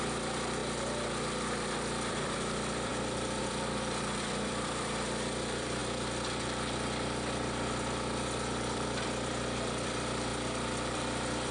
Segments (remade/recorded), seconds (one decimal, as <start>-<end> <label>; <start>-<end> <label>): 0.0-0.6 remade; 0.6-2.1 recorded; 2.1-2.9 remade; 2.9-3.4 recorded; 3.4-5.8 remade; 5.8-6.4 recorded; 6.4-11.5 remade